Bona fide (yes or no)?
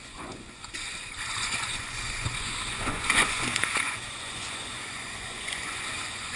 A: no